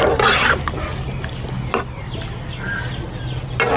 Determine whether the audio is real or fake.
real